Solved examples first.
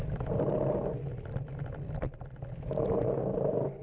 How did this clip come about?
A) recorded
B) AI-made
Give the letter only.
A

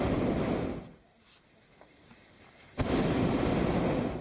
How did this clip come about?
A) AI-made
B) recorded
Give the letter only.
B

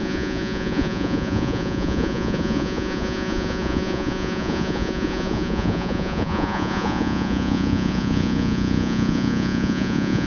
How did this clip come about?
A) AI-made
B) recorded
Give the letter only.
A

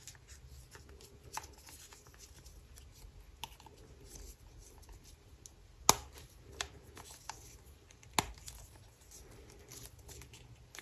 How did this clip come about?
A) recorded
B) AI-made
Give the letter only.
A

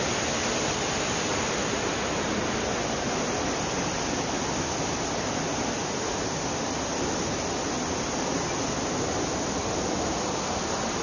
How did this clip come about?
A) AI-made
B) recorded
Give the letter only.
B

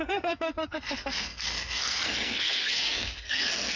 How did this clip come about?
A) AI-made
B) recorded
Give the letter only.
A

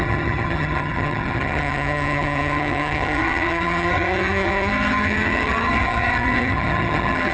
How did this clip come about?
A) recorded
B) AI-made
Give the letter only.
B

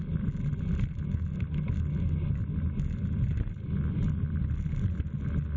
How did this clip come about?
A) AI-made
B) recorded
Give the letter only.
B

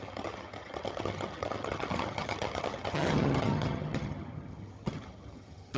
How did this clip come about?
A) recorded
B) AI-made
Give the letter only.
B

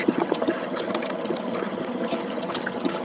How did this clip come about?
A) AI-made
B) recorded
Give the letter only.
A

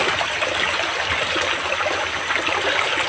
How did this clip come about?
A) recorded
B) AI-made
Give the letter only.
A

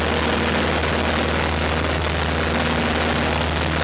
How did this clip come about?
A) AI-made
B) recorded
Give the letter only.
B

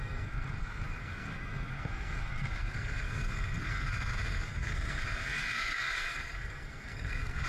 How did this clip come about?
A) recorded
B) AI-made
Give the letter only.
B